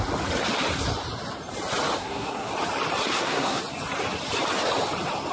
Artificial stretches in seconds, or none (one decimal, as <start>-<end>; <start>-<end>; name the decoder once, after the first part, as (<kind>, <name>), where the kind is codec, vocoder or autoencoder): 2.0-2.5 (codec, SNAC); 3.1-3.6